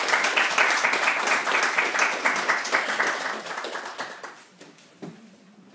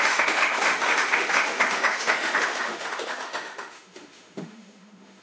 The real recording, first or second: first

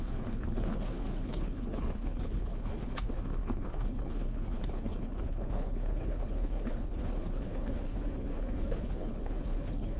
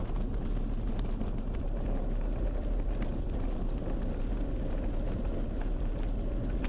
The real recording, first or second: second